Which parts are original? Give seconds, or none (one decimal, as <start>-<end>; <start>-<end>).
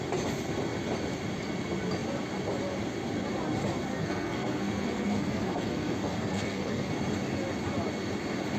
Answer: 0.0-3.9; 6.9-8.6